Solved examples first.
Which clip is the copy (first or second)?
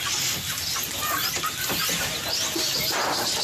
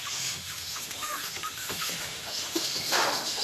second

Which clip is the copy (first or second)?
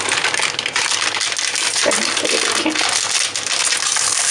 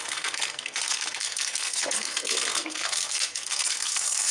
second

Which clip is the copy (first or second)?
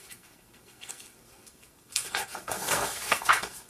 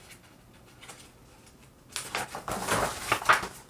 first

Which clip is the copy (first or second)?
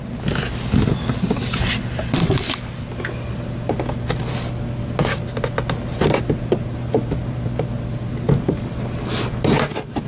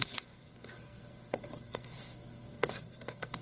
second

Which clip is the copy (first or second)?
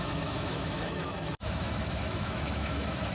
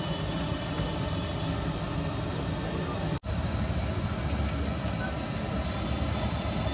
first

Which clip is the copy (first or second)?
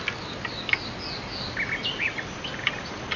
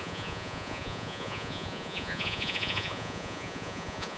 second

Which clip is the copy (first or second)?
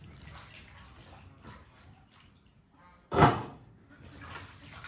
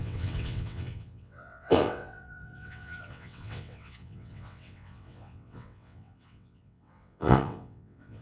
second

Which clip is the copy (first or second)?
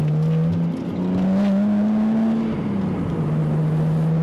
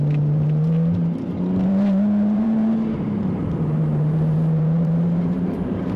second